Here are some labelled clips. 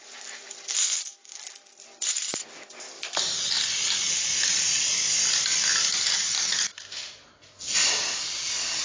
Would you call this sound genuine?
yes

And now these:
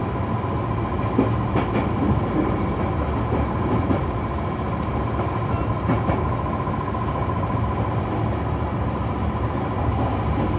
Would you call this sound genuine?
yes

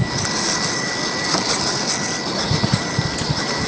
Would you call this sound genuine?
yes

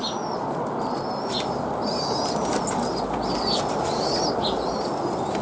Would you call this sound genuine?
yes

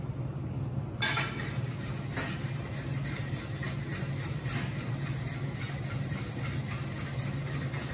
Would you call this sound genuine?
yes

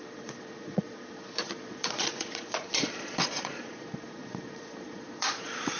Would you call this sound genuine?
no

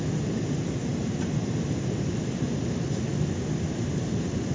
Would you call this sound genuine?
yes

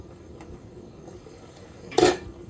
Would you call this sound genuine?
no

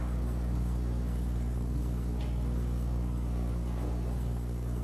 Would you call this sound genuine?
no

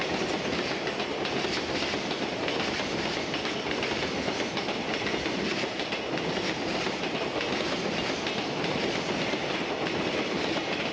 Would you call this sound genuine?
yes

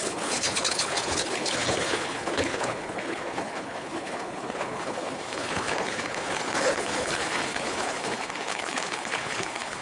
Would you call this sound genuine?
no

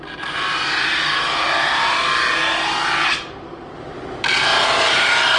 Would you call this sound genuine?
yes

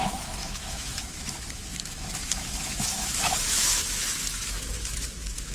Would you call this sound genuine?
no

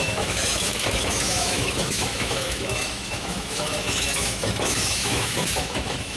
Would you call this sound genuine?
no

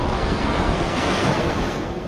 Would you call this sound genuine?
no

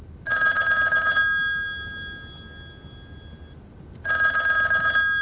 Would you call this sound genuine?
yes